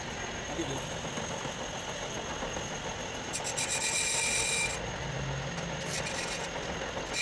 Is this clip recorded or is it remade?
recorded